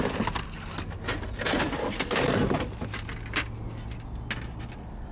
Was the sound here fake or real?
real